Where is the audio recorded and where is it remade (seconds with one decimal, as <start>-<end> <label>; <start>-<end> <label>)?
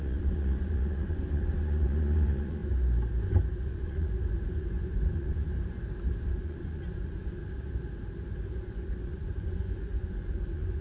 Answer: 0.0-2.6 remade; 2.6-3.6 recorded; 3.6-5.5 remade; 5.5-6.3 recorded; 6.3-7.4 remade; 7.4-8.5 recorded; 8.5-10.8 remade